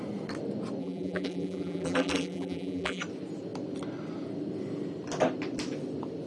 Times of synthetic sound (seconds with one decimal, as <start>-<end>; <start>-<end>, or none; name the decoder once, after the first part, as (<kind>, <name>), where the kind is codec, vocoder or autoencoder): 0.8-3.0 (vocoder, BigVGAN v2)